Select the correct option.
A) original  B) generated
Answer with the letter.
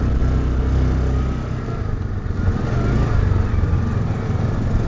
A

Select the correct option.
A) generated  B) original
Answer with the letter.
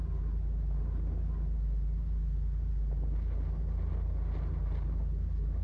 B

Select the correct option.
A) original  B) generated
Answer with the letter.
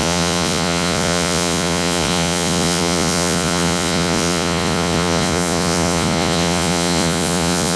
B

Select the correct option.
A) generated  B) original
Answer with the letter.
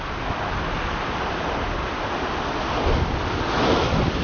B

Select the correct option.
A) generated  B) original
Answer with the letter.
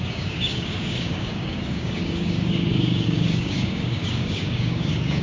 A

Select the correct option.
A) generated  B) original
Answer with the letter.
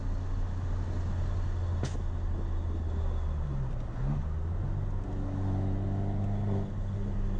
B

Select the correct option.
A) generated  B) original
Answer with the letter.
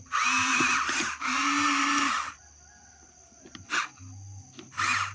B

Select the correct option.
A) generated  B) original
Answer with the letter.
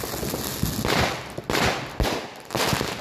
B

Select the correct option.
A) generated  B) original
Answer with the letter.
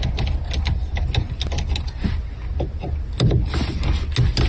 B